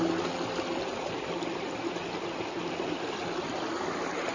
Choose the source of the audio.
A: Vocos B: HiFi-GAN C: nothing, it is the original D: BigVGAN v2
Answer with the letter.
C